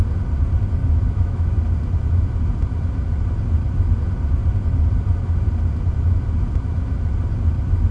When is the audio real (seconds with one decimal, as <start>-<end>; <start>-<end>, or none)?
0.0-0.8; 1.6-7.9